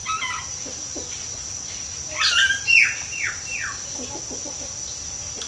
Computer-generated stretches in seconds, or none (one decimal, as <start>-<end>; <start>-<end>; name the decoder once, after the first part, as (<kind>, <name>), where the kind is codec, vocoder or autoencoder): none